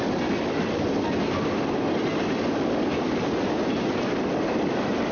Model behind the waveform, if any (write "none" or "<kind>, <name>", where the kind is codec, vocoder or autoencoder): none